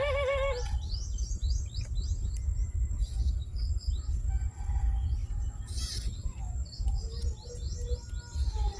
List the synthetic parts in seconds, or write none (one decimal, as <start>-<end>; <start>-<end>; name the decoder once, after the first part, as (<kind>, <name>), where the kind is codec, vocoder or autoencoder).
none